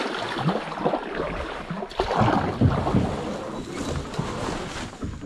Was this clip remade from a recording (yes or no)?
no